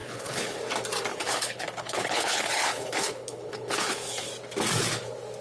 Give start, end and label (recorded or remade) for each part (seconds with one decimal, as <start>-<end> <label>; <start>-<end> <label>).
0.0-0.6 remade; 0.6-1.1 recorded; 1.1-4.3 remade; 4.3-5.4 recorded

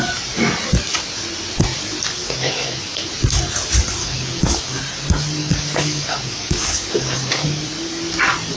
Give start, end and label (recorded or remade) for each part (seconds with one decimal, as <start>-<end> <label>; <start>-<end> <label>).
0.0-2.1 recorded; 2.1-3.1 remade; 3.1-4.0 recorded; 4.0-4.8 remade; 4.8-5.4 recorded; 5.4-7.6 remade; 7.6-8.6 recorded

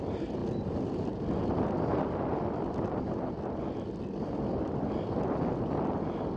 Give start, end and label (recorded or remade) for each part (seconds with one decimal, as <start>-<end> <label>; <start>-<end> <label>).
0.0-0.4 recorded; 0.4-1.1 remade; 1.1-6.4 recorded

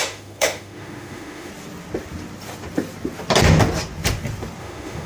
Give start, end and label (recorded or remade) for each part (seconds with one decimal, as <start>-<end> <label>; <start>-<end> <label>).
0.0-1.5 remade; 1.5-4.6 recorded; 4.6-5.1 remade

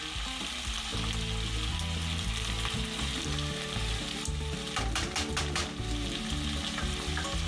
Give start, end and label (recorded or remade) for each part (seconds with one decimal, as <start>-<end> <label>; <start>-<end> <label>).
0.0-7.5 recorded

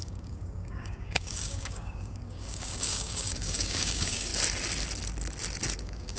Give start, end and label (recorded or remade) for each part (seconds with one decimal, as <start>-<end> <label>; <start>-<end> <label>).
0.0-4.3 remade; 4.3-5.8 recorded; 5.8-6.2 remade